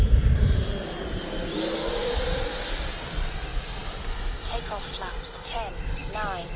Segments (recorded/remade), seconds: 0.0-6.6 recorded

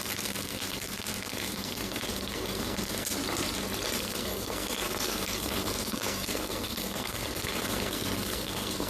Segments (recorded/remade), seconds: 0.0-3.2 remade; 3.2-4.0 recorded; 4.0-8.9 remade

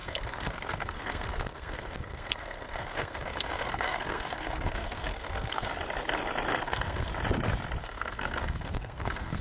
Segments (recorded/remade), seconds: 0.0-5.7 remade; 5.7-6.6 recorded; 6.6-7.1 remade; 7.1-7.8 recorded; 7.8-9.4 remade

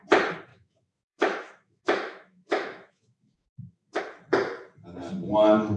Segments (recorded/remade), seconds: 0.0-0.5 recorded; 0.5-4.0 remade; 4.0-5.8 recorded

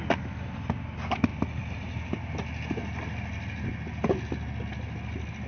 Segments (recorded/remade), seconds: 0.0-5.5 recorded